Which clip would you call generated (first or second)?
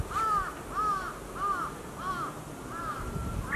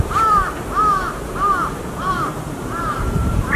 second